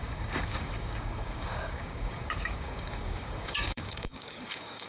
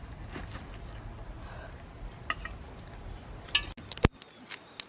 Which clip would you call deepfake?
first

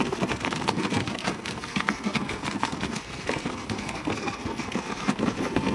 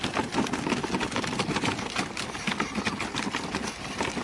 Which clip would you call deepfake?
first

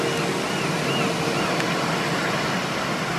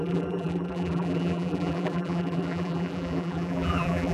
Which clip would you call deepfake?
second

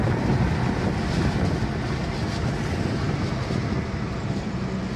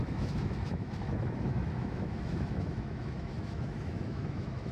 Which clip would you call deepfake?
second